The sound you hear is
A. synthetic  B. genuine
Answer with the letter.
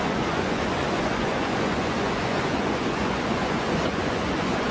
A